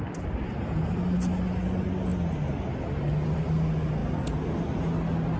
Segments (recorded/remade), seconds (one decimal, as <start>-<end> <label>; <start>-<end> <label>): 0.0-5.4 recorded